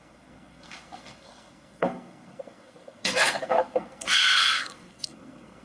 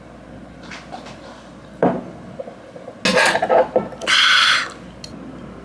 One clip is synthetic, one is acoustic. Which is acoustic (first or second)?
second